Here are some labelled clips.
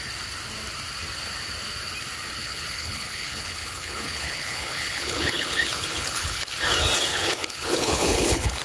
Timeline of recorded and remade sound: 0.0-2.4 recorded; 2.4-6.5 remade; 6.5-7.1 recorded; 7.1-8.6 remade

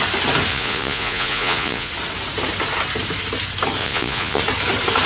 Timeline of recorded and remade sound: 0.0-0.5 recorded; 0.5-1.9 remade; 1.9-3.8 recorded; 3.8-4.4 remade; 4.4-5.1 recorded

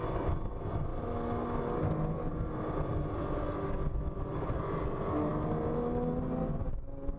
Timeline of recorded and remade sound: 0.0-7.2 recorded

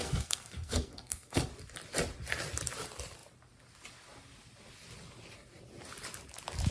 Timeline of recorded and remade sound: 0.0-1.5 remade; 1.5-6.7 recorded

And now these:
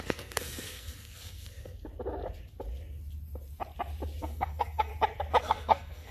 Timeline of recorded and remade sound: 0.0-1.9 remade; 1.9-4.2 recorded; 4.2-4.9 remade; 4.9-5.4 recorded; 5.4-6.1 remade

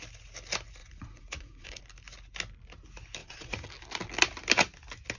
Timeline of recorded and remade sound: 0.0-0.8 recorded; 0.8-1.8 remade; 1.8-3.2 recorded; 3.2-3.7 remade; 3.7-5.2 recorded